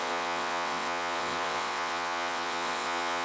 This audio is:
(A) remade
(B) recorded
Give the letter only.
A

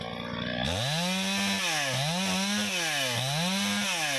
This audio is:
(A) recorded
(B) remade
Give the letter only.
A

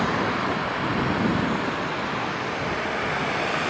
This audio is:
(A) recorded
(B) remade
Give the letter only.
A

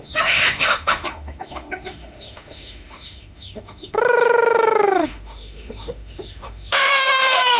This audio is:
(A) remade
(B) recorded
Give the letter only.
A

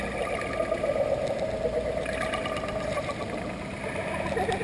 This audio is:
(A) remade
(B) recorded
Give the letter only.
B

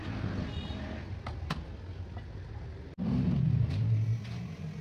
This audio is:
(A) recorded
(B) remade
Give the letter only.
A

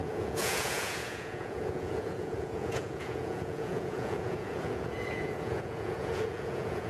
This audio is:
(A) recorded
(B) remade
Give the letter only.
B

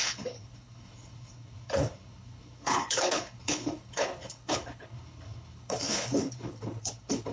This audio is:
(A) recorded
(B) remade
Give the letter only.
B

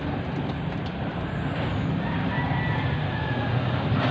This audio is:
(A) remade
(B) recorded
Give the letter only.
B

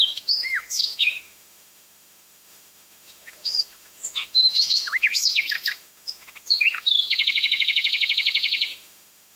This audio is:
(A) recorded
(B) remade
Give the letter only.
B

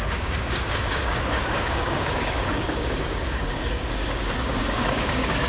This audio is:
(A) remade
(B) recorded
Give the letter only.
A